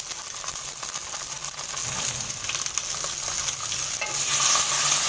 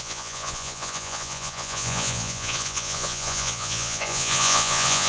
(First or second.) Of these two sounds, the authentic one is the first